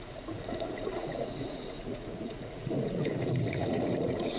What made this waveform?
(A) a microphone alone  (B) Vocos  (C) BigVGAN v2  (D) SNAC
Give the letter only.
B